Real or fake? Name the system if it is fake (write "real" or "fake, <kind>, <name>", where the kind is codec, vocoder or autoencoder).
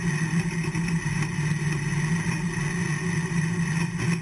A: real